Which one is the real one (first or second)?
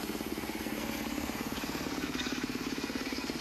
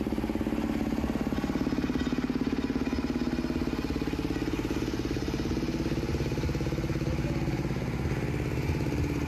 second